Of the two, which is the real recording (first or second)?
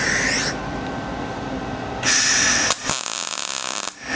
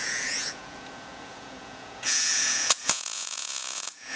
first